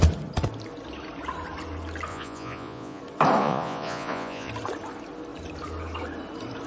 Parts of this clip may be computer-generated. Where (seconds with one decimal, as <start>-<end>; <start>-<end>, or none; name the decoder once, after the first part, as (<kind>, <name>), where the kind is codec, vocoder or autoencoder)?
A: 2.1-3.0 (vocoder, Vocos); 3.4-4.5